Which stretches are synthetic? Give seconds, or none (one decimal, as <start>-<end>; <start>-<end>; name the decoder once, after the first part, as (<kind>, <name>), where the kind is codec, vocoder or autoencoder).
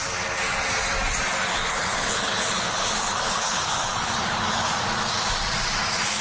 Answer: 1.5-4.7 (codec, HILCodec)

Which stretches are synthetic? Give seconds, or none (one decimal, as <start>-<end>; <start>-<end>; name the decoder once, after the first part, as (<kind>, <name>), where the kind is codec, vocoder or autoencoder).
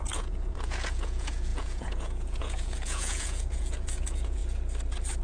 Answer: 0.0-4.4 (vocoder, Vocos)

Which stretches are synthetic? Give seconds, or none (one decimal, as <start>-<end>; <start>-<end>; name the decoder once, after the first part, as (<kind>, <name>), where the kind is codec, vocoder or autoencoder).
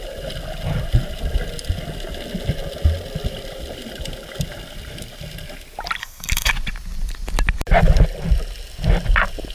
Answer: 6.0-6.5 (codec, SNAC)